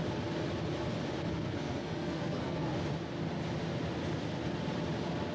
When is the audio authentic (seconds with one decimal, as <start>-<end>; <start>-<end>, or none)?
0.0-1.3; 2.7-5.3